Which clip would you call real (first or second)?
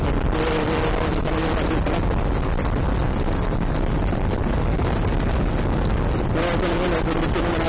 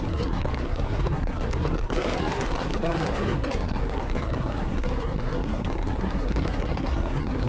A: first